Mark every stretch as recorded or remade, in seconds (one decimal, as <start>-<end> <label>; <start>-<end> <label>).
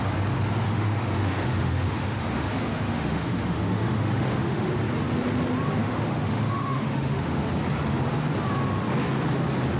0.0-0.6 recorded; 0.6-4.7 remade; 4.7-5.8 recorded; 5.8-7.4 remade; 7.4-9.8 recorded